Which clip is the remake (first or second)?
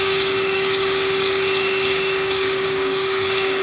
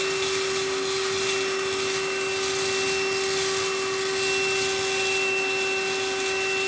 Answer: first